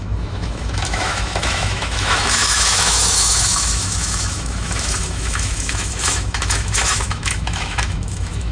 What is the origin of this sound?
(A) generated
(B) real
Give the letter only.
A